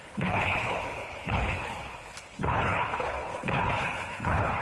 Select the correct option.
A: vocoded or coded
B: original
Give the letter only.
A